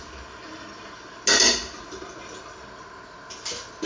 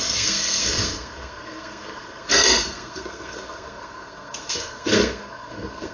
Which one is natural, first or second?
first